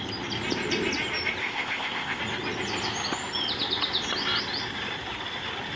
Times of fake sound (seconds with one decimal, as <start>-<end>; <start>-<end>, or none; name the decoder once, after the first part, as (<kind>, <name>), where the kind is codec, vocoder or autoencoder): 1.4-2.2 (codec, ZipCodec)